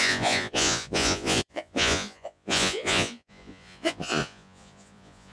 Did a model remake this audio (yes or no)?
yes